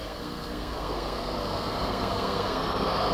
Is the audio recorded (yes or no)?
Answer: no